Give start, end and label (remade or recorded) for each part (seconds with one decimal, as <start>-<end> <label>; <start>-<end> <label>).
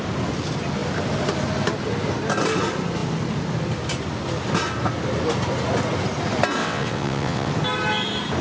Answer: 0.0-6.6 recorded; 6.6-7.5 remade; 7.5-8.4 recorded